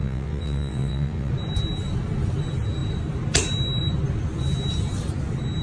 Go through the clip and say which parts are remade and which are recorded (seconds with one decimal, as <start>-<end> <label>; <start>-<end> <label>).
0.0-1.3 remade; 1.3-5.6 recorded